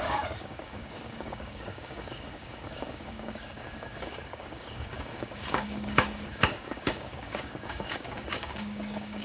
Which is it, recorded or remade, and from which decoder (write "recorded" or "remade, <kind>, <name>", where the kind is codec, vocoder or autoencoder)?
remade, codec, DAC